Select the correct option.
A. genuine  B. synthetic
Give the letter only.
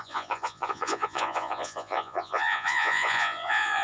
B